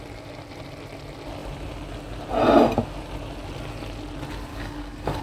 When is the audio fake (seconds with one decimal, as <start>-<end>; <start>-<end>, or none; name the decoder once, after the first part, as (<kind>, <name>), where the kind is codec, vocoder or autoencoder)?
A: 4.5-5.2 (codec, DAC)